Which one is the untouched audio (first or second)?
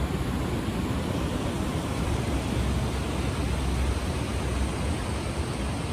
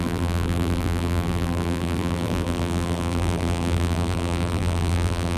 first